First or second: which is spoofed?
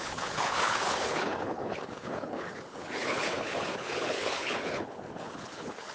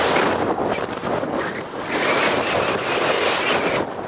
first